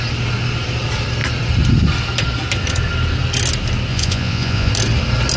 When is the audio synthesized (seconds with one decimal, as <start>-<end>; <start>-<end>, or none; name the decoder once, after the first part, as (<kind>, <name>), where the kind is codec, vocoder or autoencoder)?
3.9-4.7 (vocoder, Vocos)